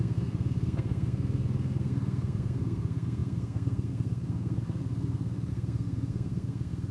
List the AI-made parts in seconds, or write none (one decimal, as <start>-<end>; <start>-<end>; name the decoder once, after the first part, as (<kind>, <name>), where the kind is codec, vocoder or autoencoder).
0.0-6.9 (codec, SNAC)